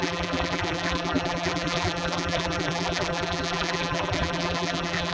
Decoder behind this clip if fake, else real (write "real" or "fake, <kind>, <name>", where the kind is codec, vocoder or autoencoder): fake, vocoder, BigVGAN v2